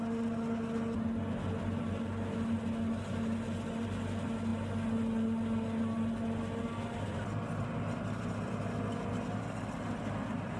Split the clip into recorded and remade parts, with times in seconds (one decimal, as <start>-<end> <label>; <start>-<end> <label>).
0.0-10.6 recorded